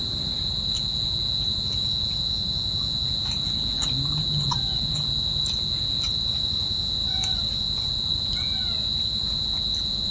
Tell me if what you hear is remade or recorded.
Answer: recorded